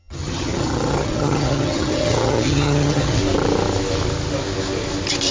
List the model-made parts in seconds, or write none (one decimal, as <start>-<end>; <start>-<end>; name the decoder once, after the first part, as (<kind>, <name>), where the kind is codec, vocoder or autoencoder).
0.0-3.2 (vocoder, HiFi-GAN)